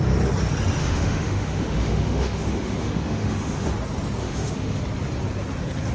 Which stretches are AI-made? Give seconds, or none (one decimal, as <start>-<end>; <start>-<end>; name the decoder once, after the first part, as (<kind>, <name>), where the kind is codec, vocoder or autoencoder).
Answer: 0.8-3.7 (autoencoder, DAC-VAE); 4.2-4.8